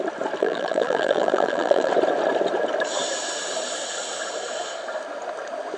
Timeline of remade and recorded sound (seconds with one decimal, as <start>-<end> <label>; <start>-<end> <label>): 0.0-0.4 recorded; 0.4-1.9 remade; 1.9-5.8 recorded